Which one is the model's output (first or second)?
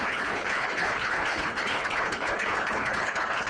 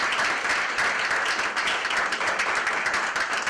first